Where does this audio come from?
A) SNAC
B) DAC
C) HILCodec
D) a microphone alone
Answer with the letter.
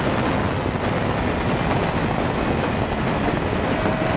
D